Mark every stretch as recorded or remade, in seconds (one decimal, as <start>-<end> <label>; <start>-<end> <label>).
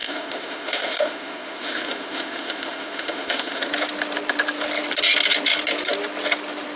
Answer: 0.0-3.7 remade; 3.7-6.8 recorded